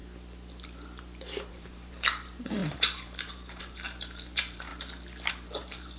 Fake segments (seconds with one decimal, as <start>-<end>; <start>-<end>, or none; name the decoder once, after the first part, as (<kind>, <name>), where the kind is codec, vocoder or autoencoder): 1.5-4.7 (vocoder, BigVGAN v2); 5.3-6.0